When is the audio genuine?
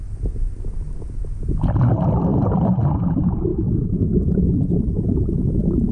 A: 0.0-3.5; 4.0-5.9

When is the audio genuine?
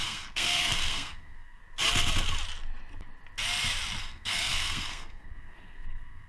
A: 1.6-4.0